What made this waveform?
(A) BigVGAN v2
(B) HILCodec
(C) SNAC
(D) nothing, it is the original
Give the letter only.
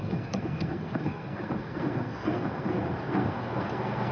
C